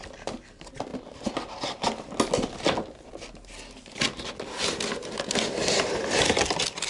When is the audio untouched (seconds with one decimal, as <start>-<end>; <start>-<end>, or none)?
0.0-6.9